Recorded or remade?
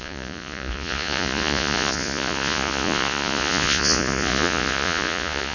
remade